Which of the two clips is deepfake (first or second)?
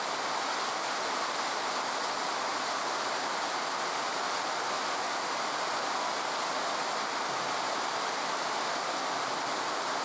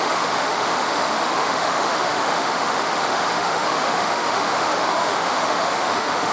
second